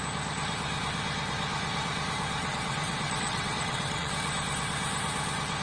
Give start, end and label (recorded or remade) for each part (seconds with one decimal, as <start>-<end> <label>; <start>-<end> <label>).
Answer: 0.0-2.4 recorded; 2.4-4.1 remade; 4.1-5.6 recorded